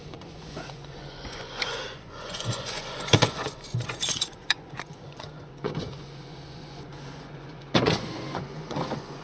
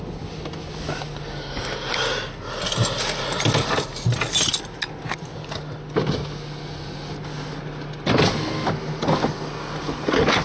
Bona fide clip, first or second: second